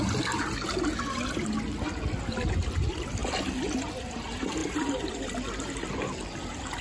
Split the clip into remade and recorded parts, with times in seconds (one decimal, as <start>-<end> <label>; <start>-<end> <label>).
0.0-4.6 recorded; 4.6-5.3 remade; 5.3-6.8 recorded

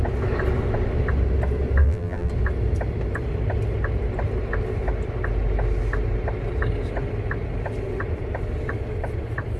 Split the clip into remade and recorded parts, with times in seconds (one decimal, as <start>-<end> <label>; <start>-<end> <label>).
0.0-1.8 recorded; 1.8-2.3 remade; 2.3-9.6 recorded

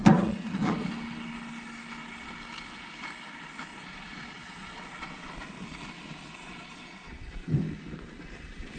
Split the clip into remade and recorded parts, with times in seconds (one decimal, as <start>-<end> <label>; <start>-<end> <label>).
0.0-0.9 remade; 0.9-3.7 recorded; 3.7-5.3 remade; 5.3-6.4 recorded; 6.4-7.1 remade; 7.1-8.8 recorded

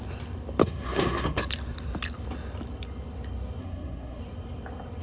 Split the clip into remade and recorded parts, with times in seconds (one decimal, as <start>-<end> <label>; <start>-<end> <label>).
0.0-0.6 recorded; 0.6-1.4 remade; 1.4-3.6 recorded; 3.6-4.2 remade; 4.2-5.0 recorded

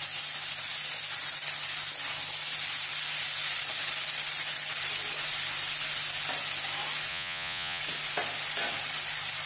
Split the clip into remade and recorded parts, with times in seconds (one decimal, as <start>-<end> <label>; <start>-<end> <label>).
0.0-7.1 recorded; 7.1-7.8 remade; 7.8-9.5 recorded

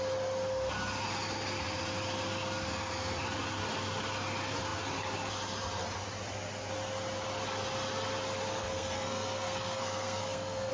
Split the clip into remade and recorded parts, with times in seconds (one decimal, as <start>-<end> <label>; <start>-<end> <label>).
0.0-8.6 recorded; 8.6-10.7 remade

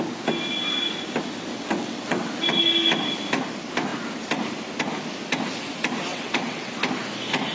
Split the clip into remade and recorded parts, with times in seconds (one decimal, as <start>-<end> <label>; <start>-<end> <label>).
0.0-1.5 recorded; 1.5-2.3 remade; 2.3-6.1 recorded; 6.1-6.7 remade; 6.7-7.5 recorded